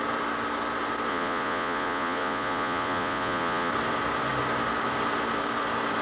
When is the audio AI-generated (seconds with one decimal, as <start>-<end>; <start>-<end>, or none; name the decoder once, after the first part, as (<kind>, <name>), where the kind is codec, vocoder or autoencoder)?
1.1-3.7 (vocoder, Vocos)